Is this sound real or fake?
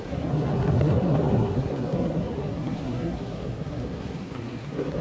fake